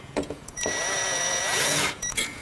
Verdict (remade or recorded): remade